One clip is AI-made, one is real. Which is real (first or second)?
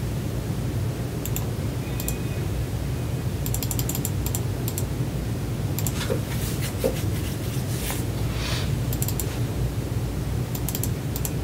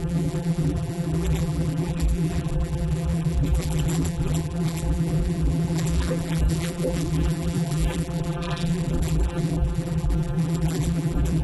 first